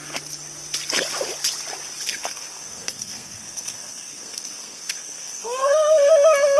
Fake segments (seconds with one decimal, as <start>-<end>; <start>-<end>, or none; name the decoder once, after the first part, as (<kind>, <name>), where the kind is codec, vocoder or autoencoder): 2.1-6.1 (codec, SNAC)